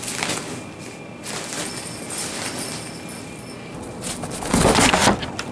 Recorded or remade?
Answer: recorded